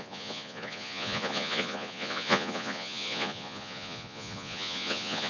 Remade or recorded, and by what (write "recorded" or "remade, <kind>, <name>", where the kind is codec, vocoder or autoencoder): remade, vocoder, Vocos